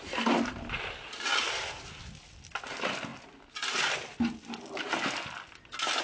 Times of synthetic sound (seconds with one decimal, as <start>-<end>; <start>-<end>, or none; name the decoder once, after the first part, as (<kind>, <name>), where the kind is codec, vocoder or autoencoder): none